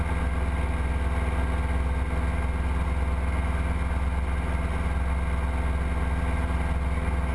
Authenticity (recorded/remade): recorded